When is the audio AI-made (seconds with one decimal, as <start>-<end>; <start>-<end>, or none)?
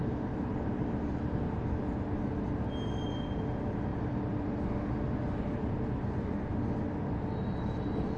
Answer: none